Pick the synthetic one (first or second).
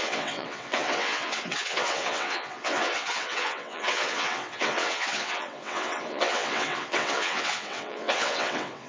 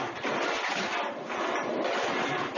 first